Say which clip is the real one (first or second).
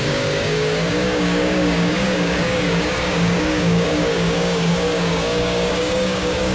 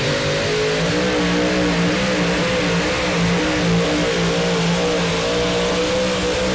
second